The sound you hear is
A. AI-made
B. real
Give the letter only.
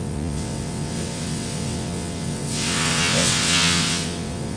A